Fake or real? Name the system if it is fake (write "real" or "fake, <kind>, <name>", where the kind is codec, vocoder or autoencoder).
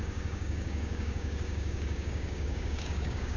fake, codec, DAC